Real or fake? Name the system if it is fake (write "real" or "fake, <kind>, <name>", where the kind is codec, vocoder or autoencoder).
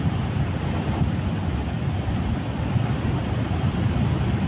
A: real